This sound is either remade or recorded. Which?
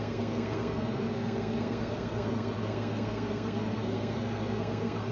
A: remade